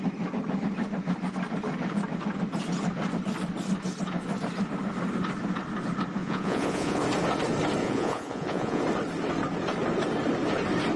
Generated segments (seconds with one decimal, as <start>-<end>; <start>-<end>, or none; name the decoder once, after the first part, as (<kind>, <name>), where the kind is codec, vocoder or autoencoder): 6.2-7.0 (vocoder, Vocos); 7.8-8.8